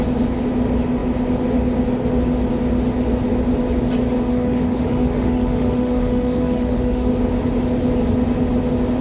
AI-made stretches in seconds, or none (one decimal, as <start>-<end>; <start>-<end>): 4.3-7.1